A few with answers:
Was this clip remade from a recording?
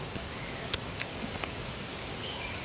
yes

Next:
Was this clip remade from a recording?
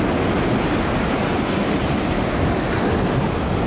no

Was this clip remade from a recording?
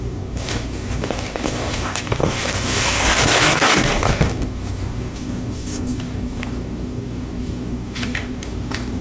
yes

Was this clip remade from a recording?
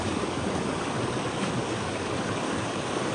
yes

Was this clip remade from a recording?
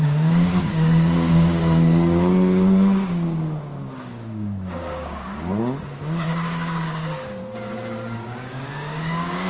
yes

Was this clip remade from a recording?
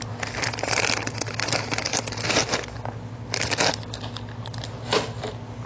no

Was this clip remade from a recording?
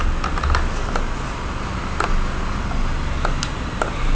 no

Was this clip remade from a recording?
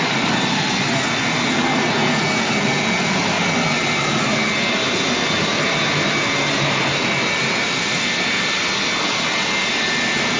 no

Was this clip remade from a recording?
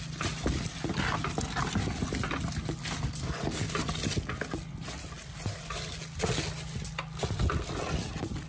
no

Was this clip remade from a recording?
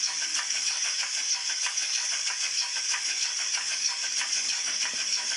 yes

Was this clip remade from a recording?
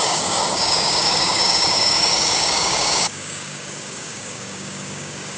yes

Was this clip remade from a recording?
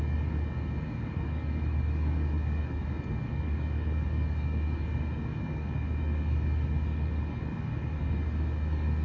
yes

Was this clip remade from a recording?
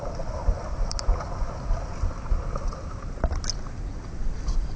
no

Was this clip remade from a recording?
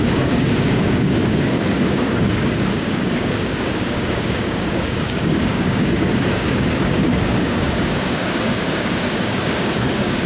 yes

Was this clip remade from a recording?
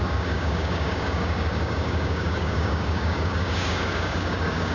yes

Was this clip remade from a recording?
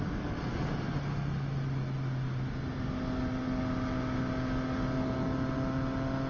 no